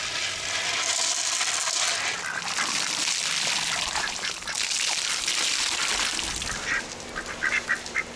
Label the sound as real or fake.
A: real